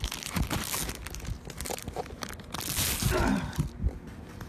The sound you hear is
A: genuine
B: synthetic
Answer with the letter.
B